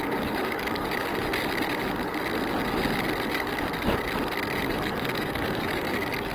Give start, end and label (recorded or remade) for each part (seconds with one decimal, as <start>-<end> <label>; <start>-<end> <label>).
0.0-1.1 remade; 1.1-4.6 recorded; 4.6-6.3 remade